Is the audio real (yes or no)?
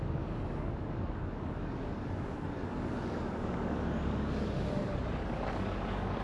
no